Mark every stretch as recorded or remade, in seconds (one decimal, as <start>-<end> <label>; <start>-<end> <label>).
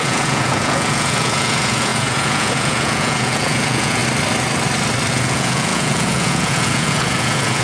0.0-4.0 remade; 4.0-5.1 recorded; 5.1-7.6 remade